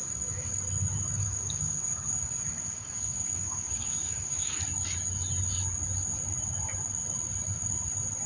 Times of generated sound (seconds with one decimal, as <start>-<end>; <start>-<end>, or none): 0.0-0.6; 1.2-4.6